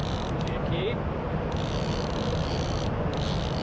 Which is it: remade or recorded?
remade